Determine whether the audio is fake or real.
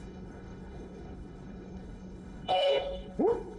fake